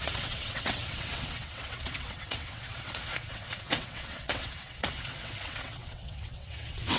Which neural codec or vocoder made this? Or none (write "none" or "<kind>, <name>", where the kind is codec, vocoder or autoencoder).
vocoder, WaveNeXt